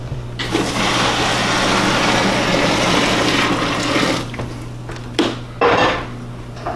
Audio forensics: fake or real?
real